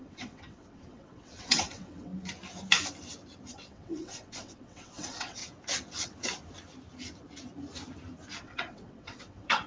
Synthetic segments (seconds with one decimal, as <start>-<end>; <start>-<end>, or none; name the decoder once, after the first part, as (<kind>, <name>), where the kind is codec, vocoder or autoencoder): 0.0-2.1 (vocoder, WaveNeXt); 3.5-5.4; 8.4-9.7